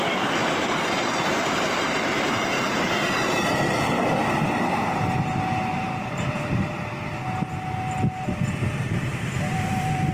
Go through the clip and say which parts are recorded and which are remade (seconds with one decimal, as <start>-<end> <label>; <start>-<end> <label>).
0.0-0.4 recorded; 0.4-2.9 remade; 2.9-5.7 recorded; 5.7-6.7 remade; 6.7-8.6 recorded; 8.6-10.1 remade